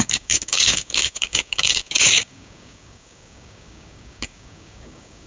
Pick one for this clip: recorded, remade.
remade